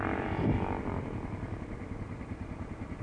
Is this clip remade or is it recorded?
recorded